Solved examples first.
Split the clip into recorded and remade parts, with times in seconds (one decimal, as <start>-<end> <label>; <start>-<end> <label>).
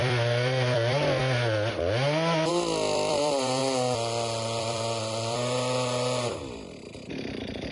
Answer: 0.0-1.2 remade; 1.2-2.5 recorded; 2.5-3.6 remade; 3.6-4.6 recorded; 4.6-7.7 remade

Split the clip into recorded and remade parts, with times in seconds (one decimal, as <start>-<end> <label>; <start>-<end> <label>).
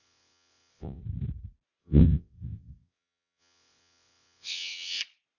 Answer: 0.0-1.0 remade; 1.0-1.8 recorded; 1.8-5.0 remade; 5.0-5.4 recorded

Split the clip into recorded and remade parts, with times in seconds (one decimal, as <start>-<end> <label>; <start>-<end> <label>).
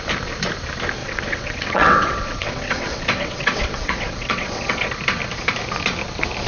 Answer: 0.0-1.0 recorded; 1.0-4.9 remade; 4.9-6.5 recorded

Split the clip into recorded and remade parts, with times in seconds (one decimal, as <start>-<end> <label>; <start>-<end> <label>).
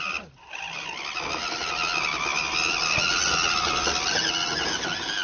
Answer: 0.0-5.2 recorded